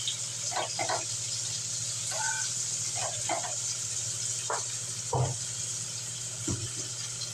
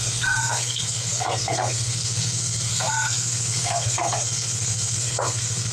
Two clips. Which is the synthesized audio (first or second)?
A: second